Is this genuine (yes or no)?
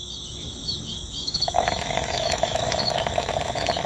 no